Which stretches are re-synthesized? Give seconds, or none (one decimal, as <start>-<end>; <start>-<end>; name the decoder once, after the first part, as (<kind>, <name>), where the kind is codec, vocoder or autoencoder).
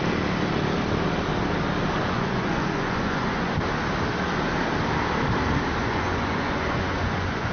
2.0-3.5 (vocoder, Vocos); 5.8-7.5